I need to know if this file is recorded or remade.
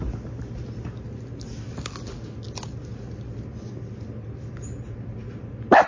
recorded